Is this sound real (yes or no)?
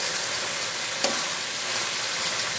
yes